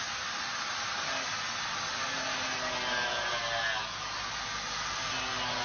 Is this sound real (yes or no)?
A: yes